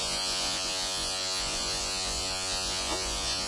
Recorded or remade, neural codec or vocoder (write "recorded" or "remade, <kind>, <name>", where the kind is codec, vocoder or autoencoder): remade, vocoder, Vocos